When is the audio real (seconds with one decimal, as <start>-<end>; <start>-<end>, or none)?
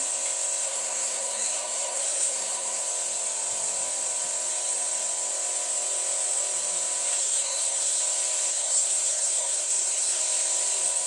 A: 0.0-0.6; 2.8-7.2; 8.0-8.5; 10.2-11.1